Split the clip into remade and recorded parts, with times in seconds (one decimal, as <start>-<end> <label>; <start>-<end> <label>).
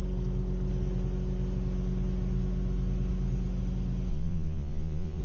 0.0-4.1 recorded; 4.1-5.2 remade